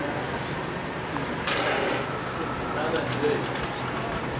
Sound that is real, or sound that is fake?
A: real